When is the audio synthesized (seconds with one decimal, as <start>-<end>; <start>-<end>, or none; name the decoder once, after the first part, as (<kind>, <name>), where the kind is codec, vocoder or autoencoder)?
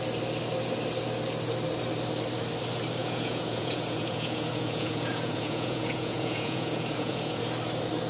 3.0-7.4 (vocoder, Vocos)